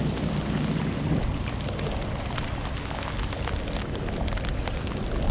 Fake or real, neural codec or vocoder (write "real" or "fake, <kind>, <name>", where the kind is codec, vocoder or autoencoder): real